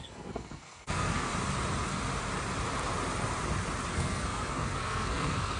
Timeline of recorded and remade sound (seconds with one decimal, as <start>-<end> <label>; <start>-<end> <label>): 0.0-1.3 remade; 1.3-3.9 recorded; 3.9-5.6 remade